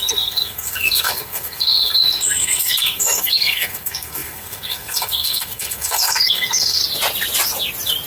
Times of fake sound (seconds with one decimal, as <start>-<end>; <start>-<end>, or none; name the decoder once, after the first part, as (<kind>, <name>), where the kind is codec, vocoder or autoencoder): 0.0-6.8 (codec, SNAC)